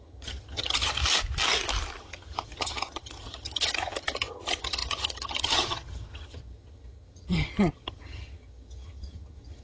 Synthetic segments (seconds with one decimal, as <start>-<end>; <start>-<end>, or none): 0.0-1.0; 2.0-9.6

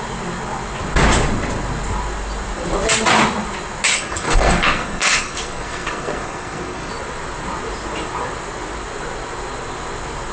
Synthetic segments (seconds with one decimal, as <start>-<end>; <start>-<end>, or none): 3.9-6.9

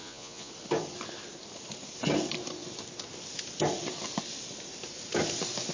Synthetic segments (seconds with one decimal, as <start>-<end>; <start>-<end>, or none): 0.0-0.5

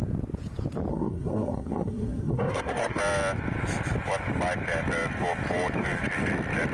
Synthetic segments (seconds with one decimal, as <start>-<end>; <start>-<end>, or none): 0.9-3.0

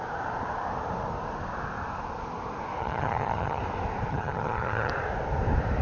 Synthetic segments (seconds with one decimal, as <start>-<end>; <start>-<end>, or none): 2.8-3.6; 4.1-4.9

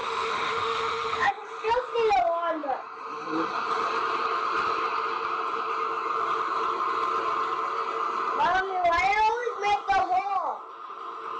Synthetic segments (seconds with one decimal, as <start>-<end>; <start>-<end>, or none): 0.0-1.3

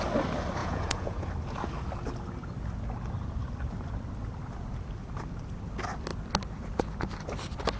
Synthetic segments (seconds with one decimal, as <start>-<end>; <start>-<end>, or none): 0.6-1.3